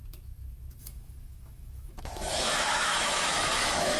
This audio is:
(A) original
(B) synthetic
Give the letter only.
B